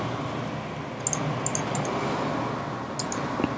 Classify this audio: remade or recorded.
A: recorded